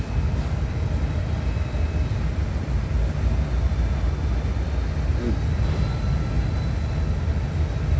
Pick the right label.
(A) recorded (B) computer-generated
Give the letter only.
A